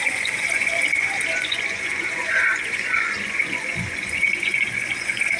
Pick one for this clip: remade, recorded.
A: remade